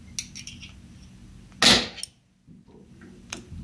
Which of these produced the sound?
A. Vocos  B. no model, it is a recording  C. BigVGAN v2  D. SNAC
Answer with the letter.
B